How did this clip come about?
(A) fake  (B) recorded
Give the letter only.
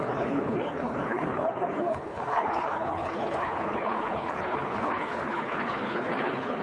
A